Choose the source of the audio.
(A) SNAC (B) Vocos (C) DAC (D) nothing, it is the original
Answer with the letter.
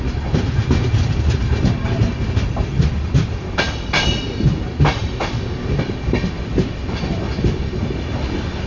D